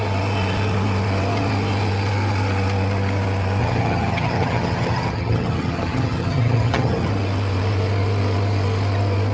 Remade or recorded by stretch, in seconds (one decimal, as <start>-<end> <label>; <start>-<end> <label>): 0.0-3.6 recorded; 3.6-7.1 remade; 7.1-9.3 recorded